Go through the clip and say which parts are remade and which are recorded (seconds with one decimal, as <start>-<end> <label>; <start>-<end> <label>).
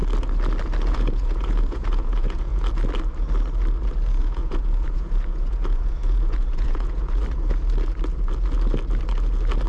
0.0-0.9 recorded; 0.9-2.5 remade; 2.5-4.2 recorded; 4.2-7.2 remade; 7.2-9.7 recorded